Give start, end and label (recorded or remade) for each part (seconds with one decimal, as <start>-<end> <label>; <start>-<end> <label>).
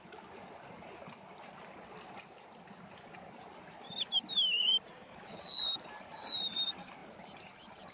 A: 0.0-4.6 recorded; 4.6-5.4 remade; 5.4-7.9 recorded